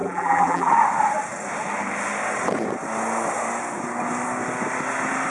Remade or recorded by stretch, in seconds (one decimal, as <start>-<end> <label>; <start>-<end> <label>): 0.0-0.7 remade; 0.7-5.3 recorded